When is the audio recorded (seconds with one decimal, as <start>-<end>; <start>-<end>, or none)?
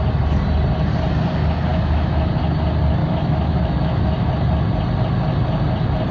0.0-1.7; 2.3-3.0; 4.3-6.1